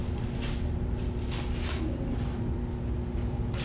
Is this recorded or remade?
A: recorded